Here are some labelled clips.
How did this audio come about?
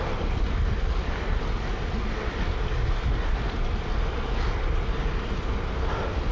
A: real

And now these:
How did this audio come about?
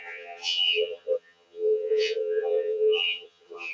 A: fake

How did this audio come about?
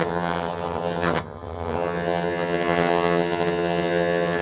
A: fake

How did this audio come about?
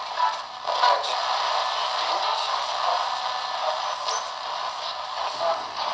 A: real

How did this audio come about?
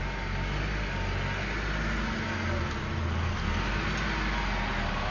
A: real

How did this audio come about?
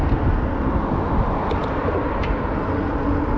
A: real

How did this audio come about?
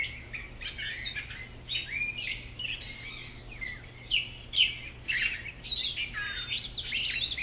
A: real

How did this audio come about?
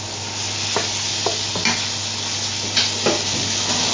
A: real